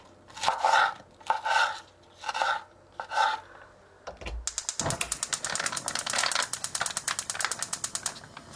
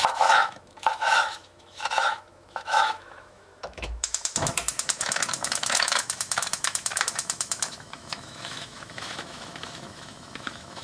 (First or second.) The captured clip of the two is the first